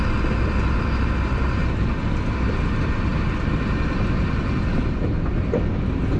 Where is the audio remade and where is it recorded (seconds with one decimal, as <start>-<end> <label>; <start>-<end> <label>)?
0.0-1.6 remade; 1.6-2.5 recorded; 2.5-6.2 remade